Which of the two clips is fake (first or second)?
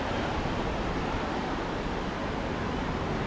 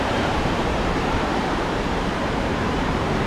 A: second